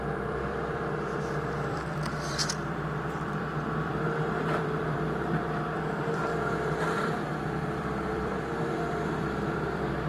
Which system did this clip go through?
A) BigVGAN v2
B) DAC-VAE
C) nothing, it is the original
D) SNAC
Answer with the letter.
A